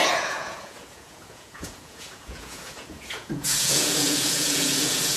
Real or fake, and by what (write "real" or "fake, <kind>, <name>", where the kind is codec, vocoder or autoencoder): fake, vocoder, Vocos